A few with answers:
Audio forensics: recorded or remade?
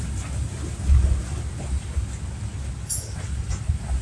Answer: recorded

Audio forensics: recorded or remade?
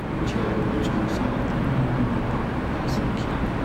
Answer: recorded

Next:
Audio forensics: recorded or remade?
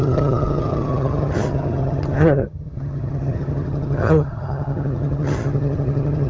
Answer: remade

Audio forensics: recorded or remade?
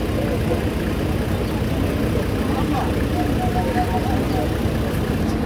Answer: recorded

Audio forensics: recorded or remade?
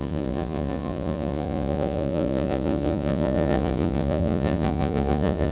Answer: remade